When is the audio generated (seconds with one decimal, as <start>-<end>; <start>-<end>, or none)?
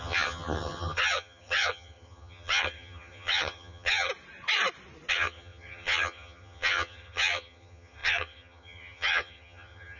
0.0-4.1; 5.1-10.0